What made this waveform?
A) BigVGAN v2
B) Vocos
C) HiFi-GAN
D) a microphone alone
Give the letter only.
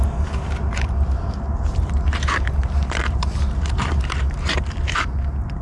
A